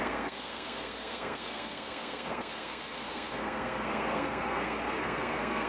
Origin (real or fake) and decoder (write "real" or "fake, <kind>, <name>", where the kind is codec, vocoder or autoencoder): fake, codec, SNAC